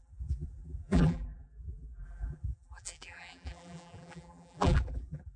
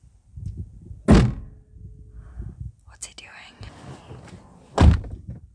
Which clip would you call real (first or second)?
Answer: second